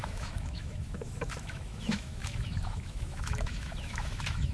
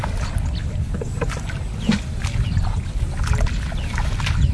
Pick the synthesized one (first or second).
first